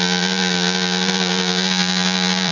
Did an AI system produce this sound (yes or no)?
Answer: yes